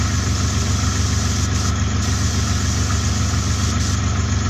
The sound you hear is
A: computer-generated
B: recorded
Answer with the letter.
B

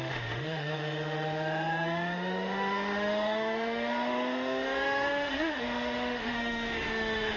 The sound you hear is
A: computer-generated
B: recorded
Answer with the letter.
A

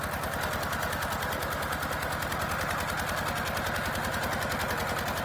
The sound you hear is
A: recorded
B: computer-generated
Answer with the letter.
A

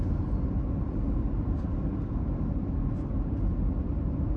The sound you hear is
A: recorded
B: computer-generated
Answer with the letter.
A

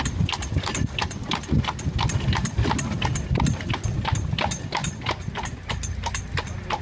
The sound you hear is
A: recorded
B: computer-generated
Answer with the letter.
A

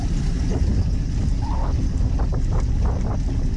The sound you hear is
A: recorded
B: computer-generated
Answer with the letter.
A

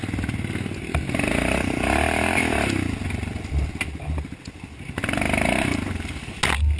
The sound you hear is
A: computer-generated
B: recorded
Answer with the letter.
B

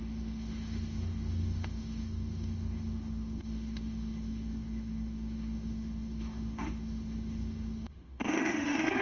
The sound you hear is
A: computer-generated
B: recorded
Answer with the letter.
A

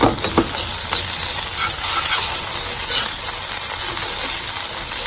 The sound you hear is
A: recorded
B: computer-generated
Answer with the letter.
A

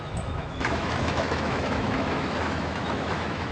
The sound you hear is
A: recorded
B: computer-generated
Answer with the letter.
B